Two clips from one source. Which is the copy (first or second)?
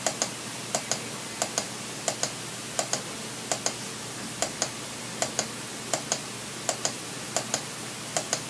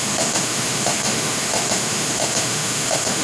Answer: second